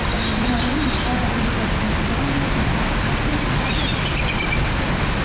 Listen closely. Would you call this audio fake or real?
real